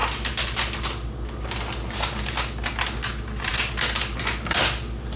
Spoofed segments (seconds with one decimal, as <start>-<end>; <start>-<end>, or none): none